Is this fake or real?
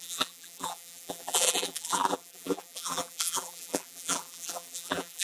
fake